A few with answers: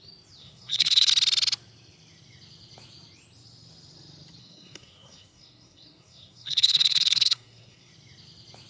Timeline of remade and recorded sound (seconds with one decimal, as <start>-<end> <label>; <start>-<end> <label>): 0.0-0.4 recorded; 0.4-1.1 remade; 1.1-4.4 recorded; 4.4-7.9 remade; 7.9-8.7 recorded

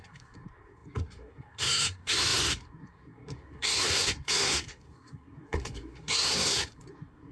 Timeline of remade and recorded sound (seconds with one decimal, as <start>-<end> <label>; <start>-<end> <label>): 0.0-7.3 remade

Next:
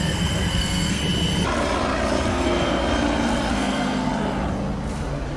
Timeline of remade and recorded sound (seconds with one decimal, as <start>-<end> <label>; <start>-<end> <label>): 0.0-1.0 remade; 1.0-2.3 recorded; 2.3-2.8 remade; 2.8-3.5 recorded; 3.5-4.1 remade; 4.1-5.4 recorded

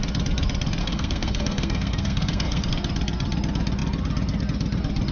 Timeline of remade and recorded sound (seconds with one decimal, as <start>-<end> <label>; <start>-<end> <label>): 0.0-0.8 recorded; 0.8-2.7 remade; 2.7-5.1 recorded

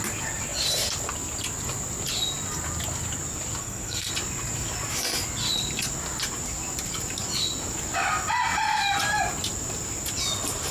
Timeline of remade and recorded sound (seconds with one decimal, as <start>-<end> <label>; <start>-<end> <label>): 0.0-3.6 recorded; 3.6-4.1 remade; 4.1-10.7 recorded

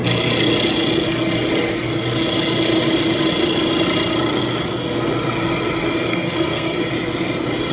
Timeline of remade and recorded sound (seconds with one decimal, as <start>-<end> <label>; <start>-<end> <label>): 0.0-6.1 recorded; 6.1-6.9 remade; 6.9-7.7 recorded

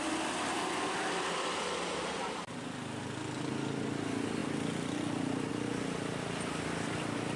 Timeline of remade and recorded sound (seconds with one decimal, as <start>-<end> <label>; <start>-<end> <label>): 0.0-7.4 recorded